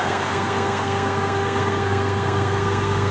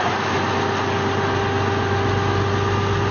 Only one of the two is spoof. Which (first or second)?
first